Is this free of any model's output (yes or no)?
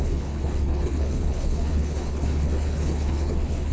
no